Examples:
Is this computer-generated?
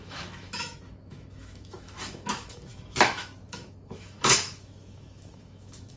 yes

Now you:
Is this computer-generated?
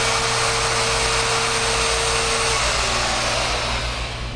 no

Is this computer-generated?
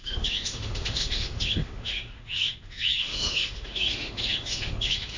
yes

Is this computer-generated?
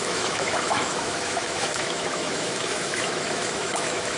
yes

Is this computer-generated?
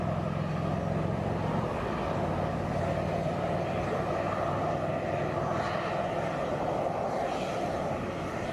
no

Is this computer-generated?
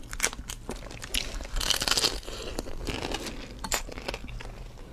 no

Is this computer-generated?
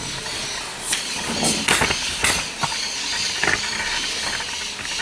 no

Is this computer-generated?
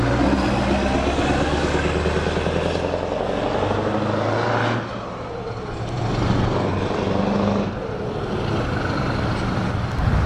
no